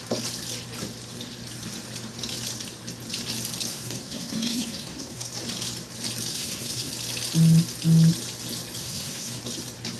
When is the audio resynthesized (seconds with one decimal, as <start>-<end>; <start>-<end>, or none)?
3.7-5.3; 6.3-6.9; 8.8-9.4